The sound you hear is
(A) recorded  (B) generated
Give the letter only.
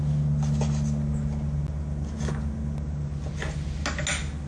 A